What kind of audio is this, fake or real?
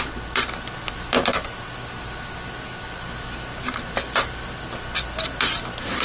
real